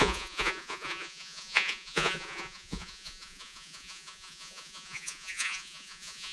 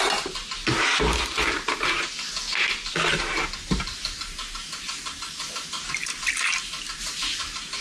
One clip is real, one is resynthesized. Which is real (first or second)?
second